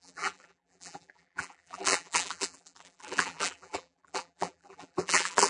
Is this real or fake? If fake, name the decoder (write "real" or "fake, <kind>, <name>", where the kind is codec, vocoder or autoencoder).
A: fake, vocoder, BigVGAN v2